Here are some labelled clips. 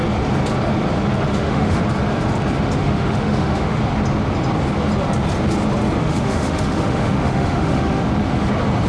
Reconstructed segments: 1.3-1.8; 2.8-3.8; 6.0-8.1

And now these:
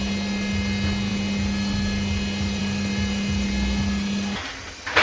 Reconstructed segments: none

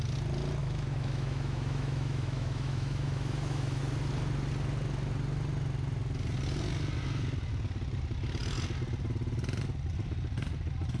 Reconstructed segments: 0.6-3.8

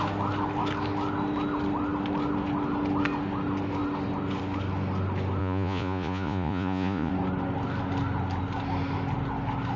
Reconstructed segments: 5.4-7.1

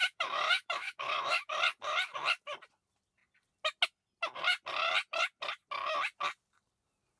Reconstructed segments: 0.0-1.6

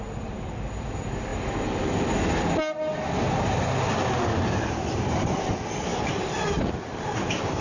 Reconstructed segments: none

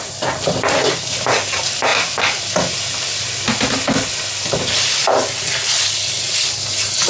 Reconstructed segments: none

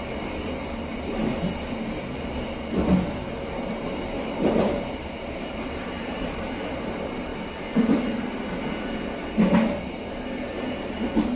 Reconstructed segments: 0.0-1.2; 4.6-7.3; 8.2-9.2; 9.8-11.4